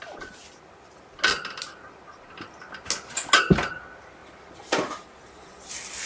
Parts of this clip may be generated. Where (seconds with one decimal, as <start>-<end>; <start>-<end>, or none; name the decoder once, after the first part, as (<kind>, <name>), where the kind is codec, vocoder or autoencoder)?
4.2-5.3 (vocoder, BigVGAN v2)